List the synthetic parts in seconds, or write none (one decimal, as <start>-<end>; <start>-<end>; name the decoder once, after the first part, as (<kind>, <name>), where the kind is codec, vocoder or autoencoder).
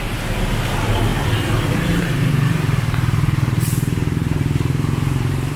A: 0.0-1.1 (vocoder, BigVGAN v2); 1.7-5.6